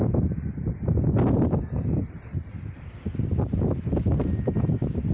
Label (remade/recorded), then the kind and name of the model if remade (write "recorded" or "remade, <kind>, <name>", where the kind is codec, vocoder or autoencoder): recorded